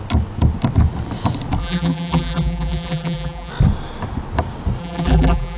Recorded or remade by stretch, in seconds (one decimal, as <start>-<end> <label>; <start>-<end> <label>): 0.0-1.6 recorded; 1.6-3.5 remade; 3.5-4.8 recorded; 4.8-5.6 remade